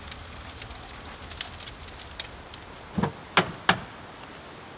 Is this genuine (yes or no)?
yes